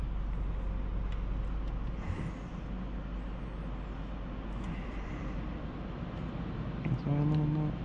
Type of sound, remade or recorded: recorded